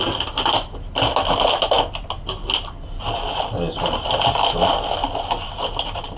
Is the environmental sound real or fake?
real